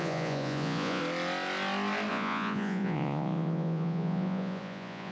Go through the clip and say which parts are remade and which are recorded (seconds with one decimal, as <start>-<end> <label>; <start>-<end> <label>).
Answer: 0.0-1.0 remade; 1.0-2.1 recorded; 2.1-5.1 remade